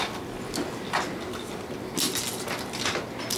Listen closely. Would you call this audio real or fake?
real